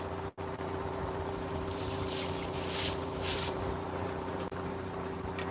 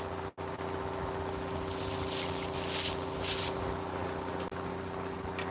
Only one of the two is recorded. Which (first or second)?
second